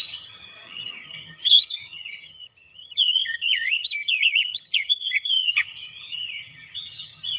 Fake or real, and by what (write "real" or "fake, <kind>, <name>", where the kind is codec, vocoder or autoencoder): fake, vocoder, HiFi-GAN